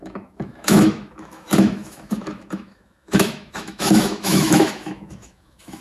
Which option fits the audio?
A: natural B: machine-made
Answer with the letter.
B